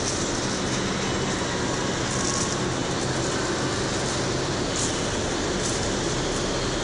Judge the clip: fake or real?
real